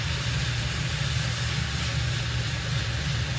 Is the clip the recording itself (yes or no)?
yes